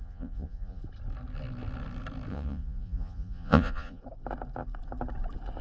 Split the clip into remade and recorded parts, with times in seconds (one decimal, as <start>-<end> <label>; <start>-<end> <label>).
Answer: 0.0-0.8 remade; 0.8-2.3 recorded; 2.3-4.0 remade; 4.0-5.6 recorded